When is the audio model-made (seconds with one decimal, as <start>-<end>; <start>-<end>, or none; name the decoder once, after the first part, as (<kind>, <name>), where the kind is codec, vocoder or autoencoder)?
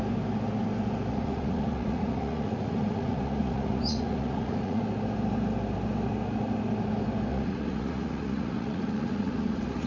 1.1-4.8 (vocoder, Vocos); 7.3-9.9